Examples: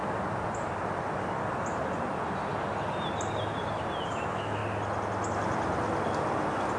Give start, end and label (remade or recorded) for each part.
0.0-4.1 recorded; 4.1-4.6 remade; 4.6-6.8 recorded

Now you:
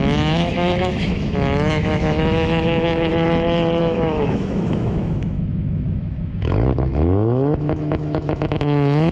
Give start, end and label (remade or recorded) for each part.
0.0-3.1 remade; 3.1-3.8 recorded; 3.8-9.1 remade

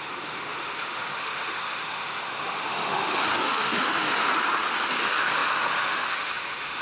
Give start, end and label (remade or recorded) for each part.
0.0-4.3 remade; 4.3-5.0 recorded; 5.0-6.8 remade

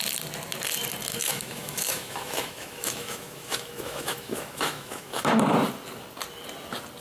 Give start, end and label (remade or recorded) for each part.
0.0-1.1 recorded; 1.1-5.3 remade; 5.3-7.0 recorded

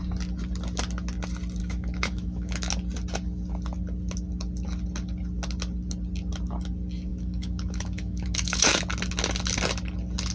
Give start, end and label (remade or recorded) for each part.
0.0-1.6 recorded; 1.6-2.7 remade; 2.7-7.1 recorded; 7.1-8.8 remade; 8.8-10.3 recorded

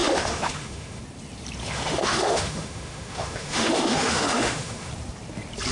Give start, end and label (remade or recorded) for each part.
0.0-1.0 remade; 1.0-1.6 recorded; 1.6-4.9 remade; 4.9-5.7 recorded

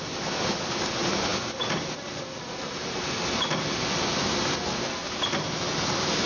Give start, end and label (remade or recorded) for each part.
0.0-6.3 recorded

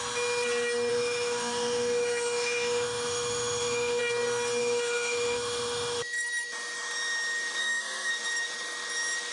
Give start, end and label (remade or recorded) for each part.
0.0-0.9 recorded; 0.9-4.0 remade; 4.0-4.6 recorded; 4.6-6.0 remade; 6.0-7.6 recorded; 7.6-8.1 remade; 8.1-9.3 recorded